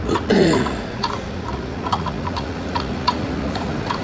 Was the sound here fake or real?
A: fake